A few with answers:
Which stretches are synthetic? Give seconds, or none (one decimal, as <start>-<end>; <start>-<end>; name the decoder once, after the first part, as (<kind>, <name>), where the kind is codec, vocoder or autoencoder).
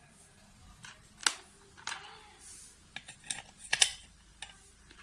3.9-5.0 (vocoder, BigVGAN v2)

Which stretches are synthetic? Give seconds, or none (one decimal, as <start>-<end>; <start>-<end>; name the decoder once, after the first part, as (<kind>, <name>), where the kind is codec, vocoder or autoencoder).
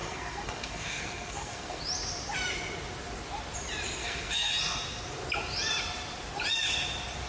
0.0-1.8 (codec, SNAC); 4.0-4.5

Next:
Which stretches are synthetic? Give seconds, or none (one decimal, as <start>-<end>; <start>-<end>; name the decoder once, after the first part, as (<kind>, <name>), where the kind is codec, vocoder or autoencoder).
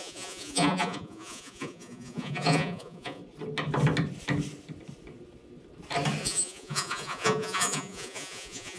0.0-3.2 (vocoder, Vocos); 6.2-8.8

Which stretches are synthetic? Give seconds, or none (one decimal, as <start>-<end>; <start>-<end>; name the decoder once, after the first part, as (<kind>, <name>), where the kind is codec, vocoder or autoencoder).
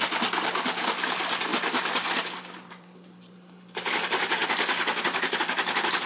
1.5-3.8 (vocoder, BigVGAN v2)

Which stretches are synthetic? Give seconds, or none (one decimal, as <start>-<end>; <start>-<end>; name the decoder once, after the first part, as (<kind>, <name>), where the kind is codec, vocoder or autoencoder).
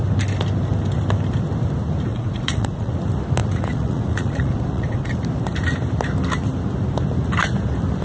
2.1-2.9 (vocoder, Vocos); 3.4-5.1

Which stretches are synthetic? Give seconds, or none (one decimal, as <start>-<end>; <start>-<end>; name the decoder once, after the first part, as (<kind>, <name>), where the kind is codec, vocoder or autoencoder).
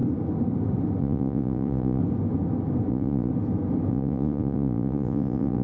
1.0-2.0 (vocoder, Vocos); 2.9-3.3; 3.9-5.6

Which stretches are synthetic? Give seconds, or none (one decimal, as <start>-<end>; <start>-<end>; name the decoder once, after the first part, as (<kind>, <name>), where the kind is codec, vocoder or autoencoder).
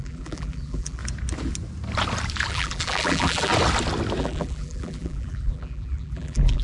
0.0-1.0 (vocoder, BigVGAN v2); 2.5-3.5; 4.2-6.6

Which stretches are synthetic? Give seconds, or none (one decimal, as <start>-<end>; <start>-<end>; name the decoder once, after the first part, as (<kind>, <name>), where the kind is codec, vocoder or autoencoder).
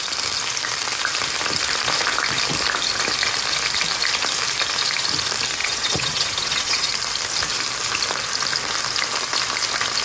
5.6-6.9 (vocoder, WaveNeXt)